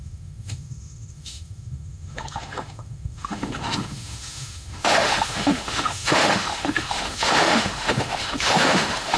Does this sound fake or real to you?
fake